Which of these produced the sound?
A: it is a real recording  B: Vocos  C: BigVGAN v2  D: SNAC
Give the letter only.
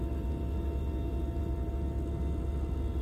A